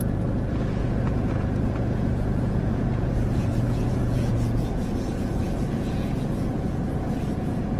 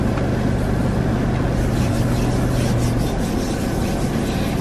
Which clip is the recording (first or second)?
second